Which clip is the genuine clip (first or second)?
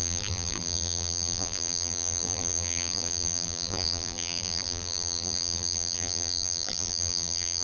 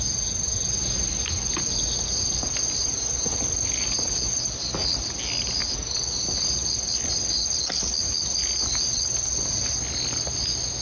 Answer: second